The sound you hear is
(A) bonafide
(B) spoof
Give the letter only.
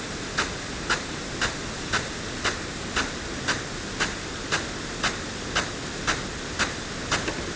A